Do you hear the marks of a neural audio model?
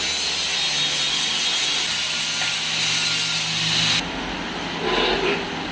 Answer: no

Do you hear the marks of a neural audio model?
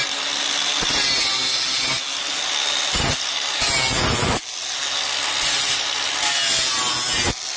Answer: no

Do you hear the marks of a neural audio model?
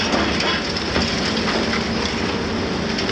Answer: no